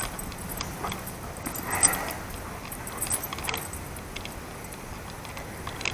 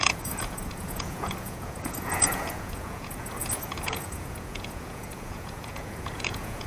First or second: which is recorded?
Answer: first